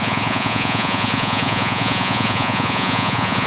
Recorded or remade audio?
remade